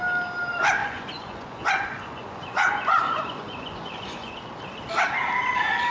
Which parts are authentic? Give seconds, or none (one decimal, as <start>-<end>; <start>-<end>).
0.0-0.8; 4.3-5.9